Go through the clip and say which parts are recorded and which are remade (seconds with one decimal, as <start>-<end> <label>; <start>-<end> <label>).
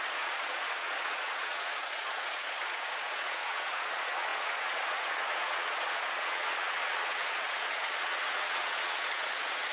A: 0.0-9.7 remade